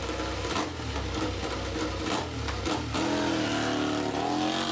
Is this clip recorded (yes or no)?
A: yes